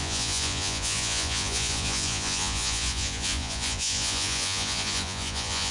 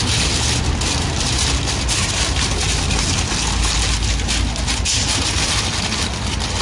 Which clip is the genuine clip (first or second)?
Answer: second